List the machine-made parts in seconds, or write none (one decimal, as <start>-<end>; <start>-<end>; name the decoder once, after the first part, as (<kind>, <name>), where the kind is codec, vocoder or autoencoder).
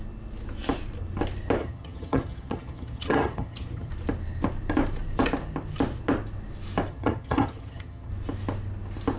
1.6-3.9 (vocoder, HiFi-GAN); 6.9-8.1